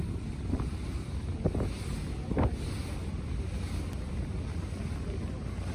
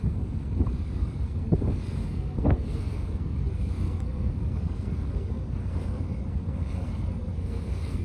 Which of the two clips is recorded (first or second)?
first